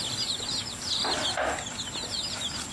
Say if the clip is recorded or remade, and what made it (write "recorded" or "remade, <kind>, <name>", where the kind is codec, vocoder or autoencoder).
recorded